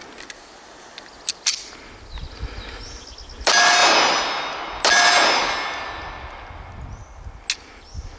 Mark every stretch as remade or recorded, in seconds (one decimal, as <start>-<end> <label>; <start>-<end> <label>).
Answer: 0.0-8.2 recorded